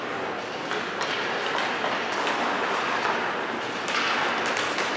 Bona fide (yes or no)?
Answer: yes